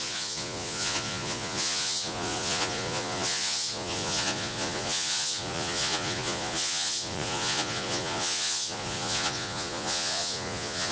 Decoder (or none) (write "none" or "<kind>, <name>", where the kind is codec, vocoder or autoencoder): vocoder, Vocos